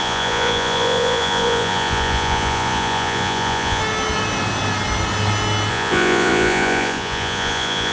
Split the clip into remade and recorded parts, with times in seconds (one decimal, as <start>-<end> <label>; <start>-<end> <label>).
0.0-3.8 remade; 3.8-5.7 recorded; 5.7-7.9 remade